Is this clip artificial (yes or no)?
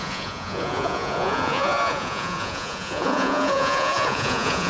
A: yes